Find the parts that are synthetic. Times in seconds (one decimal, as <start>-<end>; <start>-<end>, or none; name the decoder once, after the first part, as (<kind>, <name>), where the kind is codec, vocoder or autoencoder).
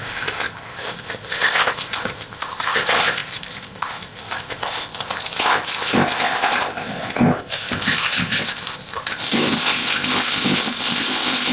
0.0-11.5 (codec, ZipCodec)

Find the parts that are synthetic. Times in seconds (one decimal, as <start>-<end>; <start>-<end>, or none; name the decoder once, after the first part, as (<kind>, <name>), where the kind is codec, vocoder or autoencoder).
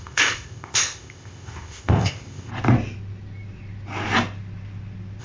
0.0-2.5 (codec, ZipCodec)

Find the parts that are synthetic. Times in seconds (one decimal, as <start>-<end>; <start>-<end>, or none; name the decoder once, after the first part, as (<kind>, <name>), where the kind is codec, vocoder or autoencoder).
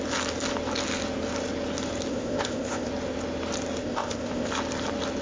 2.1-2.9 (codec, ZipCodec); 3.8-4.5